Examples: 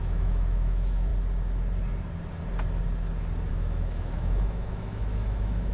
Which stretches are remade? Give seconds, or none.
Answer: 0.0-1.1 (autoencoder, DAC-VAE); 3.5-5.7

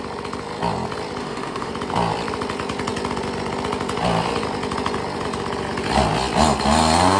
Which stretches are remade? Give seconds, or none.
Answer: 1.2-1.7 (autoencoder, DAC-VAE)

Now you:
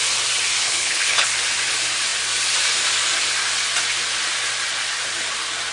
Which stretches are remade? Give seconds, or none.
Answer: 0.6-1.3 (codec, HILCodec)

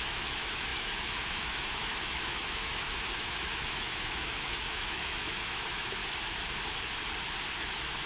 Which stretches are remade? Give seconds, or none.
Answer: 0.0-6.0 (autoencoder, DAC-VAE); 7.6-8.1

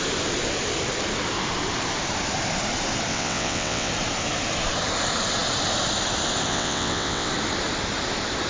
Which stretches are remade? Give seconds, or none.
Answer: 3.1-3.9 (vocoder, WaveNeXt); 6.5-7.3

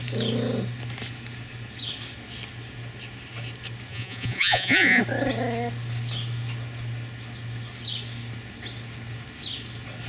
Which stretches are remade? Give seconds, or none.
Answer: 3.9-5.0 (vocoder, Vocos)